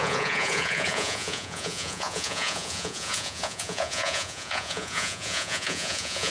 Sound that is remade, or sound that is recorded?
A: remade